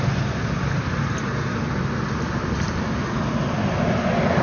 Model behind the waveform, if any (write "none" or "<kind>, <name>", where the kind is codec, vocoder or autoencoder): none